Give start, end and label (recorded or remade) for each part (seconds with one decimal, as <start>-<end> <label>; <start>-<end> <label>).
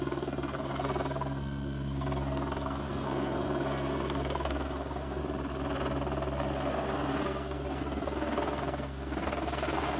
0.0-5.2 remade; 5.2-6.7 recorded; 6.7-10.0 remade